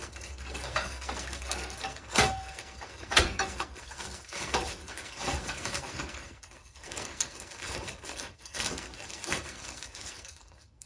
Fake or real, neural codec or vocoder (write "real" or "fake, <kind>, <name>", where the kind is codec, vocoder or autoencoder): fake, codec, SNAC